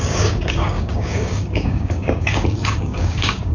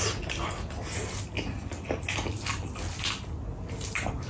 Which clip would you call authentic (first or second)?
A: second